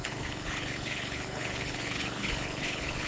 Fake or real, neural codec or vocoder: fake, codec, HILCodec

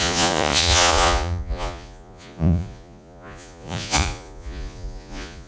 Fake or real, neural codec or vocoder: fake, vocoder, Vocos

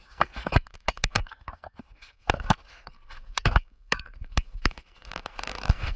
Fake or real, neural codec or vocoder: fake, codec, SNAC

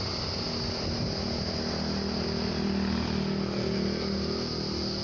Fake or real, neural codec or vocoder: real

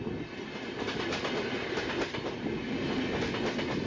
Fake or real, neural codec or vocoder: real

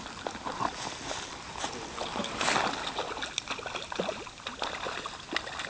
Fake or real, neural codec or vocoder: real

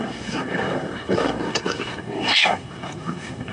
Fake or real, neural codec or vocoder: fake, codec, SNAC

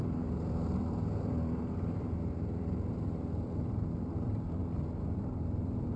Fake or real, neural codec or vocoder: fake, vocoder, BigVGAN v2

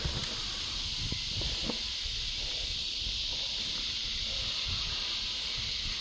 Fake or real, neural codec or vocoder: real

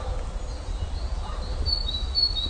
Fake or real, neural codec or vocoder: real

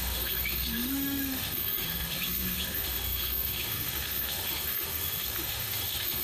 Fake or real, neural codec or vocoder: fake, autoencoder, DAC-VAE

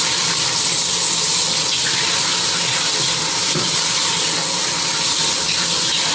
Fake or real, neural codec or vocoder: real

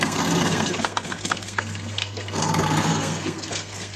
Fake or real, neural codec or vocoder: fake, codec, SNAC